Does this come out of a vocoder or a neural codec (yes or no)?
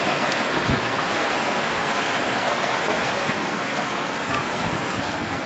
yes